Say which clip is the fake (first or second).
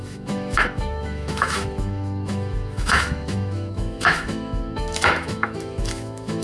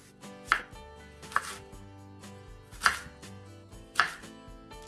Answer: first